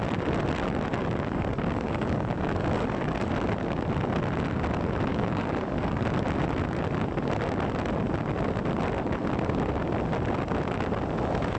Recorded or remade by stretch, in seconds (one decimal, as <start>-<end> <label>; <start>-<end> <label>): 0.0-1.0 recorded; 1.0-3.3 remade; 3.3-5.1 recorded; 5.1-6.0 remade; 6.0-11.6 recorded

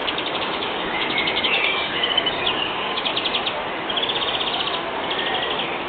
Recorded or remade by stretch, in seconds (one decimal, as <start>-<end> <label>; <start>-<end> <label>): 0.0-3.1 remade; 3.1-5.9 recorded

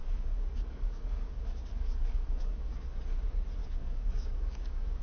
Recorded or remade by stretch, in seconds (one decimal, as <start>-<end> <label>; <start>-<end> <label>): 0.0-3.0 remade; 3.0-3.6 recorded; 3.6-5.0 remade

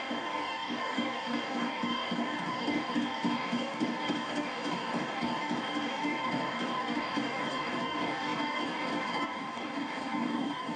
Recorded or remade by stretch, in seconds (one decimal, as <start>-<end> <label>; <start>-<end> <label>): 0.0-10.8 remade

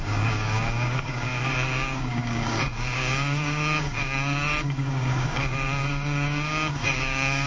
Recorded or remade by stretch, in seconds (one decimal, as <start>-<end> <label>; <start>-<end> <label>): 0.0-7.5 remade

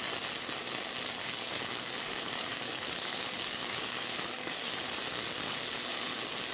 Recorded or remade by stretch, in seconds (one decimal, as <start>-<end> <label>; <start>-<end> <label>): 0.0-1.2 recorded; 1.2-4.8 remade; 4.8-6.5 recorded

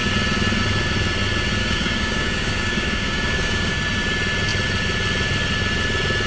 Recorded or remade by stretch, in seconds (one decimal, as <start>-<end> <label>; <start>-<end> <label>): 0.0-1.6 recorded; 1.6-3.7 remade; 3.7-6.3 recorded